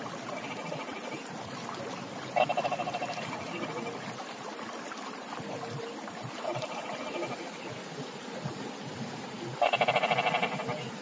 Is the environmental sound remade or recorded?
recorded